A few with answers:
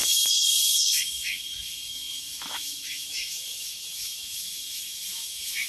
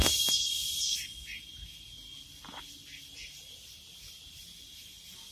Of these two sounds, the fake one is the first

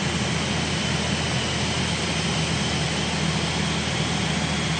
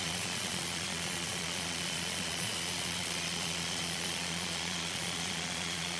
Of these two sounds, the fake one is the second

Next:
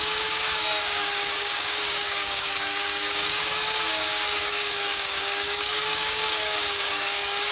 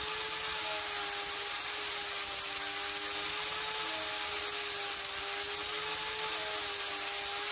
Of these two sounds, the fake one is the first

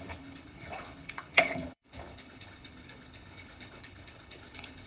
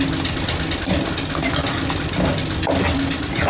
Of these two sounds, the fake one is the first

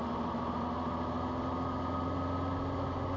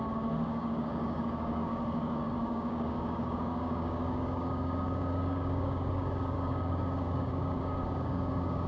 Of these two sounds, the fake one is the second